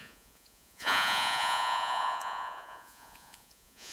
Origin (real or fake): fake